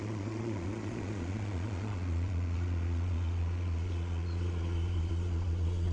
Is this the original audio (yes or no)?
no